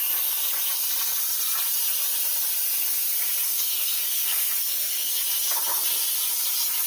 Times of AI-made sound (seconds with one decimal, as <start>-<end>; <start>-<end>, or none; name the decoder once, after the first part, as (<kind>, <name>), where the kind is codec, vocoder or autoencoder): 3.7-5.2 (codec, SNAC)